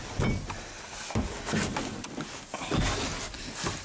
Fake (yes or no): no